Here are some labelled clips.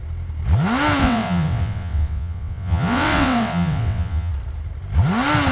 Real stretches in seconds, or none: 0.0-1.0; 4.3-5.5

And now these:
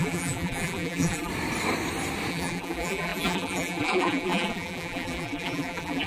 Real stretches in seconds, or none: 1.3-2.3

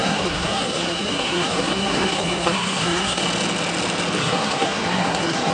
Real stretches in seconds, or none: 3.2-4.2

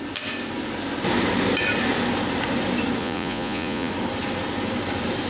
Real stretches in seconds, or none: 0.0-3.0; 3.9-5.3

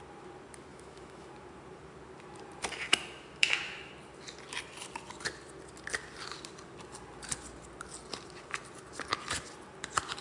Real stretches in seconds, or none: 0.0-0.7; 1.3-3.4; 3.9-10.2

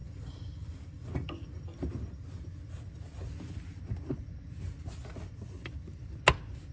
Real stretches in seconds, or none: 1.6-6.7

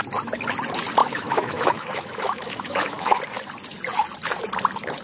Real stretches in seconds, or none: 0.0-1.0; 3.2-5.0

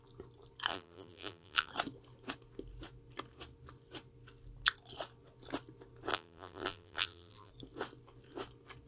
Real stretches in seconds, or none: 0.0-0.7; 1.7-6.1; 7.5-8.9